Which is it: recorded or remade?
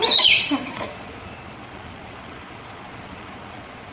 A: remade